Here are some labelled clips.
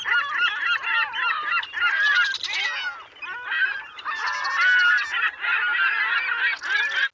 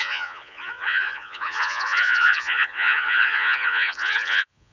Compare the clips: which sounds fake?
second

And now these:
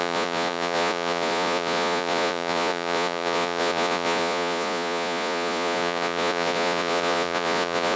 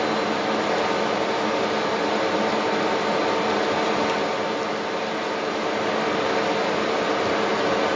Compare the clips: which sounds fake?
first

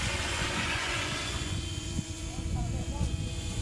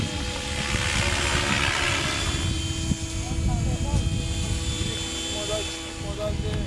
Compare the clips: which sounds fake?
first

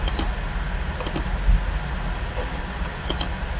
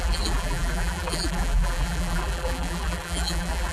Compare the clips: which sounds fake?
second